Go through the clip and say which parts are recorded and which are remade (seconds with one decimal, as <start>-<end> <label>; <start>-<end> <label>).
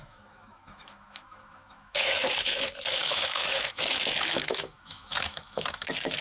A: 0.0-6.2 remade